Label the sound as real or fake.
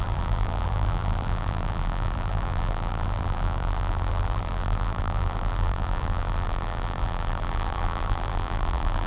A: fake